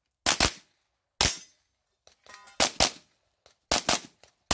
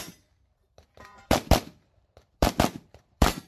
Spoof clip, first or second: second